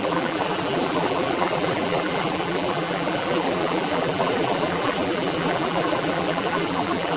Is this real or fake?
fake